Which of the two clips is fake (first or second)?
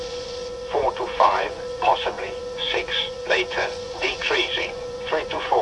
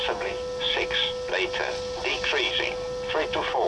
first